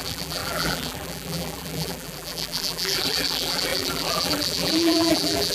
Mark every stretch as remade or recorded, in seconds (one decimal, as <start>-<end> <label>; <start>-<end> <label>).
0.0-5.5 remade